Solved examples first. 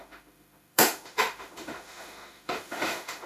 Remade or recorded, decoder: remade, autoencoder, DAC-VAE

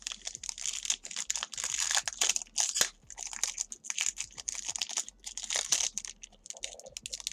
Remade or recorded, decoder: recorded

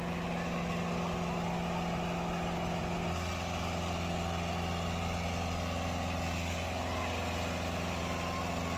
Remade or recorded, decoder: recorded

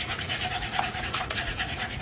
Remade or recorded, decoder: remade, vocoder, Vocos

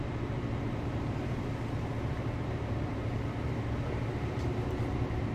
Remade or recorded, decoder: remade, vocoder, BigVGAN v2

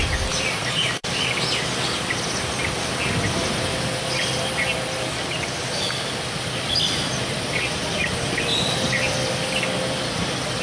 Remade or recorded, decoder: recorded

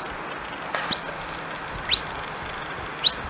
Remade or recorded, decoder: recorded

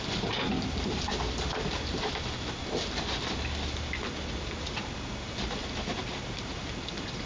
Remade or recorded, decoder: recorded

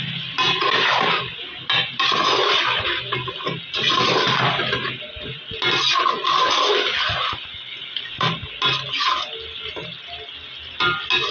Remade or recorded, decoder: recorded